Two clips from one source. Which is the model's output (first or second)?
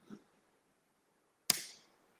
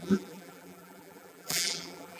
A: second